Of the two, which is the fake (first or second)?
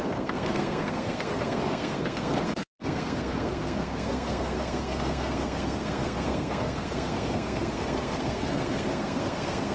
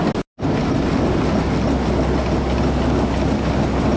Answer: first